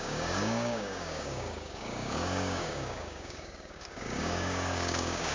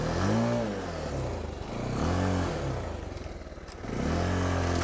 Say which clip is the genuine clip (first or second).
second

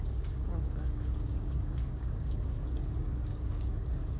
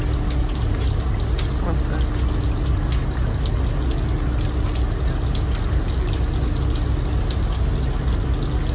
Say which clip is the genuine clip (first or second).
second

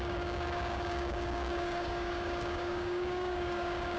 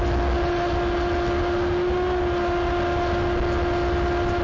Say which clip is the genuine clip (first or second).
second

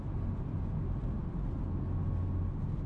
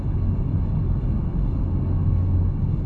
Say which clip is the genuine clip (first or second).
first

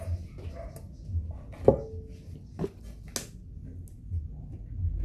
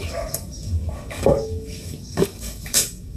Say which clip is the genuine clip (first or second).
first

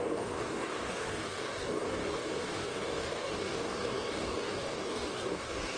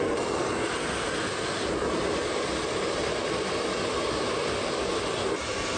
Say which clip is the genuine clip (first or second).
second